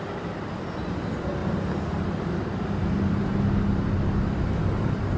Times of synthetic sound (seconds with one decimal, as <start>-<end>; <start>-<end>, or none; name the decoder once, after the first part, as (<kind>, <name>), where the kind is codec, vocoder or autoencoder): none